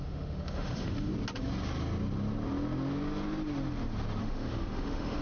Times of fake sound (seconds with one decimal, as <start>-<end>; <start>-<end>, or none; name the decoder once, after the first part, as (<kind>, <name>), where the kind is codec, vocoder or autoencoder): 0.0-1.1 (autoencoder, DAC-VAE); 4.2-5.2